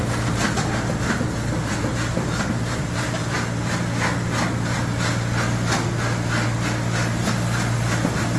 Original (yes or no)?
yes